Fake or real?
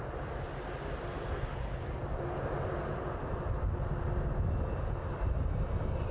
real